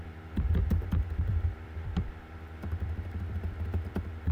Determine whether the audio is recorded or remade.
remade